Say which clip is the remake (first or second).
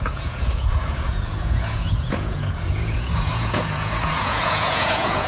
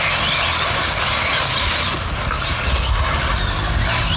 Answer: first